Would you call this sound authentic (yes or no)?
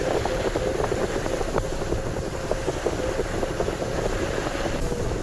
yes